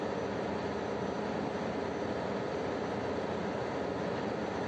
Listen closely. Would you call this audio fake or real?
real